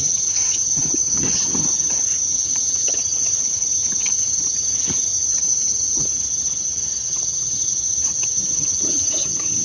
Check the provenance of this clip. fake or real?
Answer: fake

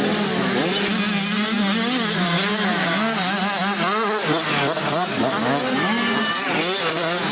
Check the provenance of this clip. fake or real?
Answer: real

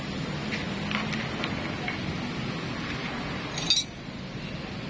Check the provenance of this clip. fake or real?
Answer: real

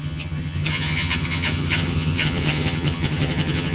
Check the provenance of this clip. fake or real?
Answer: fake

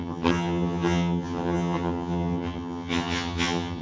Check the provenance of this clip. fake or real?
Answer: fake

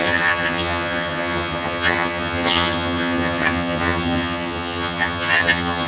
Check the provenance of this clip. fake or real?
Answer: fake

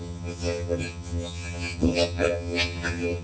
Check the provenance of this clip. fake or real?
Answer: fake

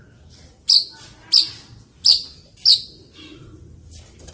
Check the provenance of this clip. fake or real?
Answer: real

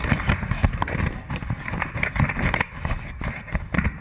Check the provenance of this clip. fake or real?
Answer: real